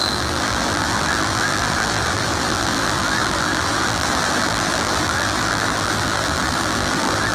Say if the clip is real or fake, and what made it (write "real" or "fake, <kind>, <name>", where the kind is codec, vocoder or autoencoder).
fake, vocoder, BigVGAN v2